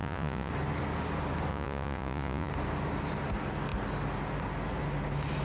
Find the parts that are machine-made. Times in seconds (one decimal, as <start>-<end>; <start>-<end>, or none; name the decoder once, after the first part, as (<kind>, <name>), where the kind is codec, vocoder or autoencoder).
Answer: 0.0-0.5 (vocoder, Vocos); 1.5-2.5